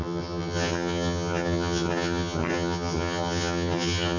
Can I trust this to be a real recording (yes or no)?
no